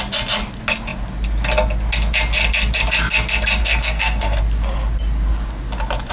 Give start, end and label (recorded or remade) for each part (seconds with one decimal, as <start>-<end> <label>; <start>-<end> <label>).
0.0-3.6 recorded; 3.6-4.4 remade; 4.4-6.1 recorded